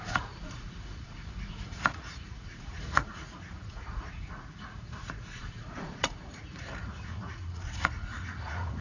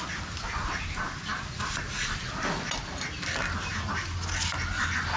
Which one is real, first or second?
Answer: second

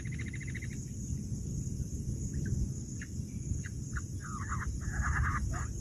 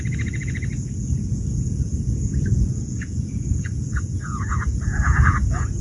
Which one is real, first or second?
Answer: first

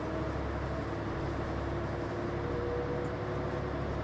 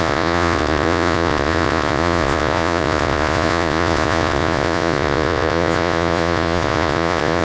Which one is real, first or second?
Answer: first